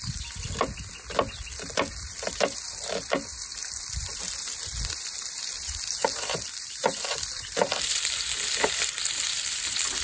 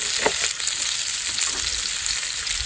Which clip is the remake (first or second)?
first